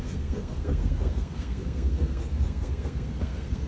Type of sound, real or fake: fake